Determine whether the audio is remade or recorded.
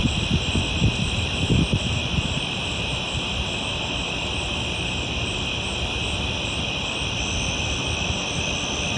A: recorded